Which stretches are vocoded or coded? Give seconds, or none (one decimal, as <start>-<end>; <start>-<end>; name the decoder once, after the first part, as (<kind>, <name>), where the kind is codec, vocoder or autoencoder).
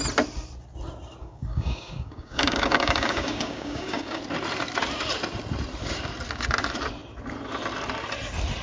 1.2-4.2 (codec, DAC)